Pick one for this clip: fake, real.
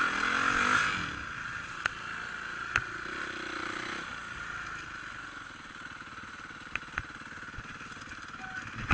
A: real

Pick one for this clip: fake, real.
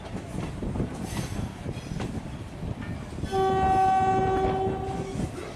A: real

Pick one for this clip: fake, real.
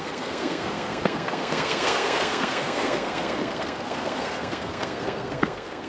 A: fake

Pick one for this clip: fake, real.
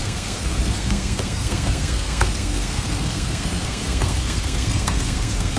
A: fake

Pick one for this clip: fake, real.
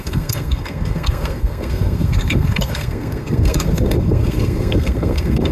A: fake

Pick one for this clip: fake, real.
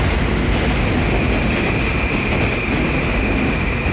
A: real